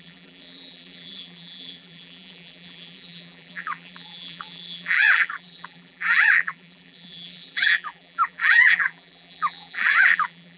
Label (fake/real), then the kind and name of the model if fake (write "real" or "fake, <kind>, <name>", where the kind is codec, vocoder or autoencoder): fake, vocoder, BigVGAN v2